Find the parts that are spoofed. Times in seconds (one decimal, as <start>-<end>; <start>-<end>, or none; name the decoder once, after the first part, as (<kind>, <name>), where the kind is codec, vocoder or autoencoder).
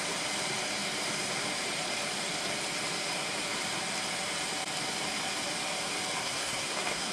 6.2-7.1 (codec, SNAC)